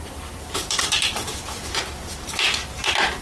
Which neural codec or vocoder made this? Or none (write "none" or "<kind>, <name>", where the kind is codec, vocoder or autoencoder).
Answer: vocoder, BigVGAN v2